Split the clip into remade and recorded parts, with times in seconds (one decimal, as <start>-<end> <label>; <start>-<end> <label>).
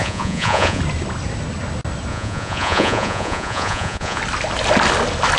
0.0-0.8 remade; 0.8-2.1 recorded; 2.1-4.2 remade; 4.2-5.4 recorded